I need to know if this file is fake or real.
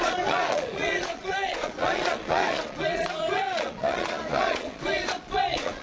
fake